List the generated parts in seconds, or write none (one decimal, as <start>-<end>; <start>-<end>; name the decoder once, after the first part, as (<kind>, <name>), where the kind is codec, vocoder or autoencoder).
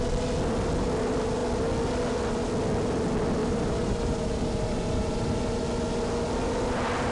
3.4-5.6 (vocoder, BigVGAN v2)